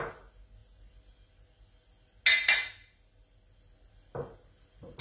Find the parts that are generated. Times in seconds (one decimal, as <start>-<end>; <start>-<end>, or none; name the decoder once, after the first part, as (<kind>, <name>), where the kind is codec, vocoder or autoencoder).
none